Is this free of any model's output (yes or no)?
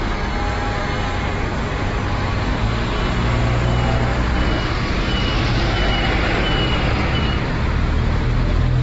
yes